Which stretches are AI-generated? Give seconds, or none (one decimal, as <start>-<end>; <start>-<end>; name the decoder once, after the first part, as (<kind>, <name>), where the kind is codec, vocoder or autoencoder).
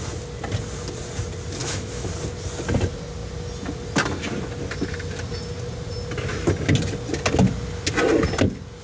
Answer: 1.6-2.1 (autoencoder, DAC-VAE)